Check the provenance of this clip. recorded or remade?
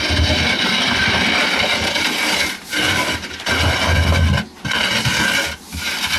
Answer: recorded